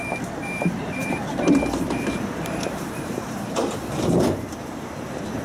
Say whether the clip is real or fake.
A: fake